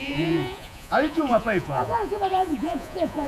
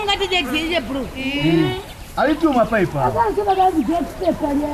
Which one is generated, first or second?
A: first